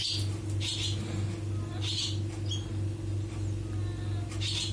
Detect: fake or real real